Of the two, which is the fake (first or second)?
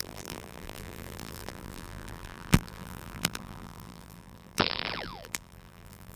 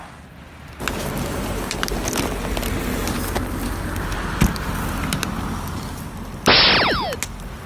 first